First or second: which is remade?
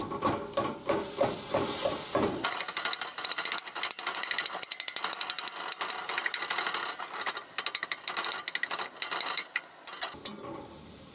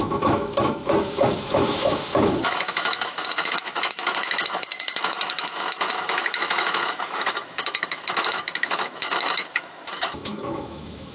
second